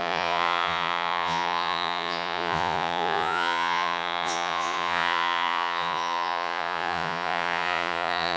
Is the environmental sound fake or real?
fake